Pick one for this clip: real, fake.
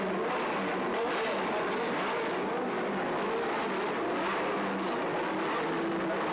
real